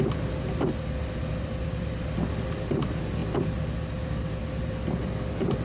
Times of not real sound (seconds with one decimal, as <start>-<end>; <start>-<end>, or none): none